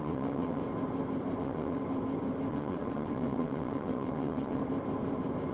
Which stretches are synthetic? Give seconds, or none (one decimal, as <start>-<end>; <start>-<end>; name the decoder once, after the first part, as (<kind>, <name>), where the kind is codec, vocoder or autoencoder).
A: 0.0-0.6 (vocoder, WaveNeXt); 1.4-1.8; 2.5-4.6